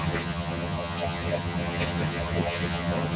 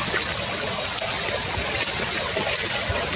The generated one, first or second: first